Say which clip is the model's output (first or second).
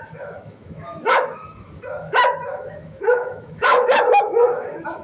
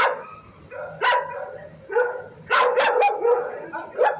first